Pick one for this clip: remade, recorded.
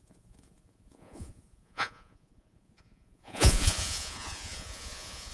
remade